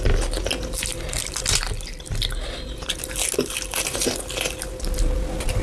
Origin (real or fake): real